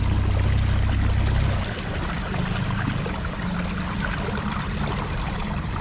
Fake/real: real